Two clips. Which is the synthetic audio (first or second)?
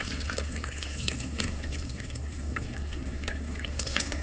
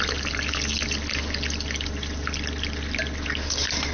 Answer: first